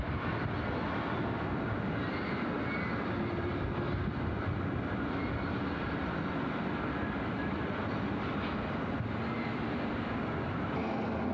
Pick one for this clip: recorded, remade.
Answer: recorded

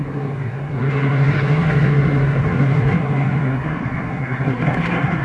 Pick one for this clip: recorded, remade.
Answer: remade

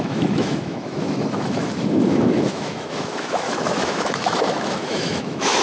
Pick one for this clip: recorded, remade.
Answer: remade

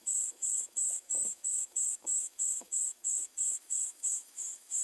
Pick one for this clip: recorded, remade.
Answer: remade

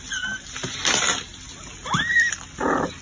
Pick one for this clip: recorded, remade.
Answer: recorded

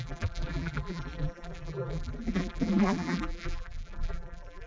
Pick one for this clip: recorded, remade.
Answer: remade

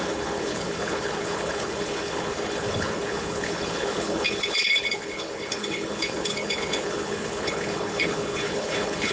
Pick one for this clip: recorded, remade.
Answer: remade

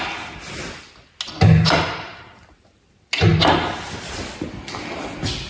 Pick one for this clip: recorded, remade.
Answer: recorded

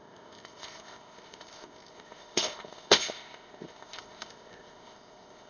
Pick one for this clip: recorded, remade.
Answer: remade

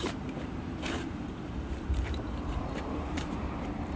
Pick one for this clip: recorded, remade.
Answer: remade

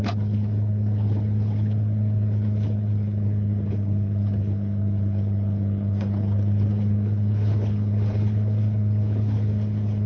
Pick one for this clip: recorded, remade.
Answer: remade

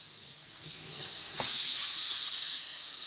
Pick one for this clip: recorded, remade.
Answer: remade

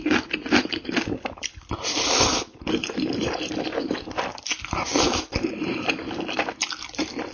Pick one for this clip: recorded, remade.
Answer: recorded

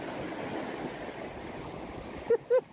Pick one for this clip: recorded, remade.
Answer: recorded